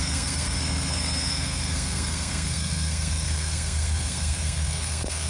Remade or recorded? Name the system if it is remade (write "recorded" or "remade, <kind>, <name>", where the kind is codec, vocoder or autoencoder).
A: remade, codec, SNAC